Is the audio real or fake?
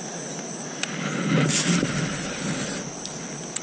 real